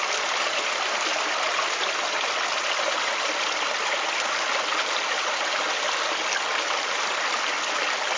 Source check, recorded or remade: recorded